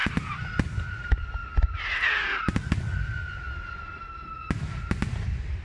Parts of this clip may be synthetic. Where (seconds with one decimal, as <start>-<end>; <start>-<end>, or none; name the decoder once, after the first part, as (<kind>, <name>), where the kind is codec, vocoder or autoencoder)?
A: none